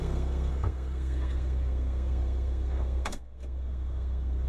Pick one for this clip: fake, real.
fake